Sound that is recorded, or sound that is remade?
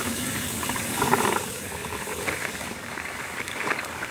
remade